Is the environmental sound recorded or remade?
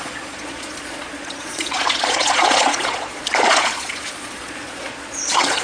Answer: remade